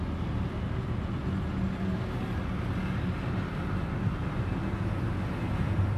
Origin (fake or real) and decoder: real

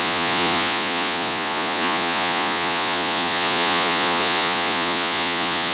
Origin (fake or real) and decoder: fake, vocoder, Vocos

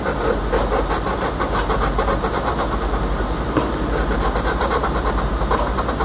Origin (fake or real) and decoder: real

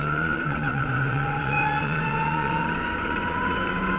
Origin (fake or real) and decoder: fake, vocoder, Vocos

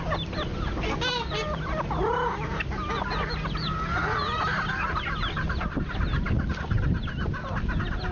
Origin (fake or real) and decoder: real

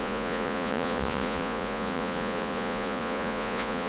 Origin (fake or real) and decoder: fake, vocoder, Vocos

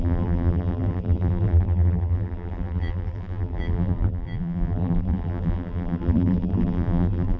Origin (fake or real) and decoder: fake, vocoder, BigVGAN v2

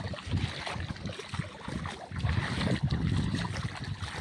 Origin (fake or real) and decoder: real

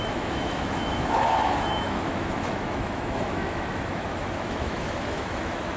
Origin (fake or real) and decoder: fake, autoencoder, DAC-VAE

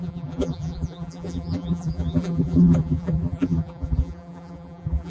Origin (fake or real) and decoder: fake, vocoder, BigVGAN v2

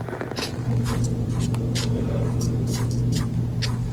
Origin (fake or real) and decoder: real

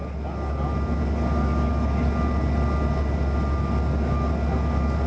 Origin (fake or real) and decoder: real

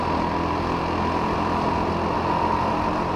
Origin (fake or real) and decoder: real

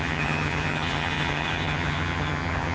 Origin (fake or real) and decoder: fake, vocoder, HiFi-GAN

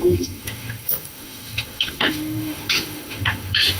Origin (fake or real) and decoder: fake, autoencoder, DAC-VAE